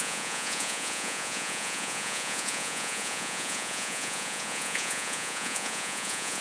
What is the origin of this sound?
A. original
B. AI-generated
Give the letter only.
B